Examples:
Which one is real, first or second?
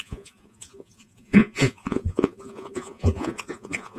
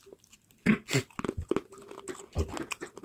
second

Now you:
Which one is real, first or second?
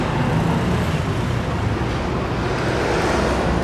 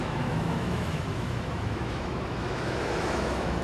first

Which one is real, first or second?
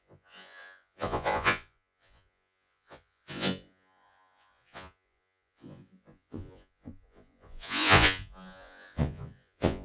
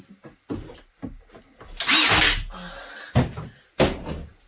second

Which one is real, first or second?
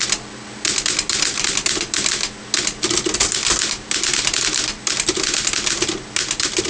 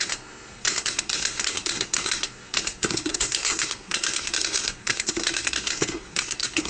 first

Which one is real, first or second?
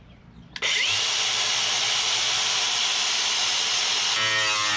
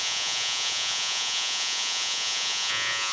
first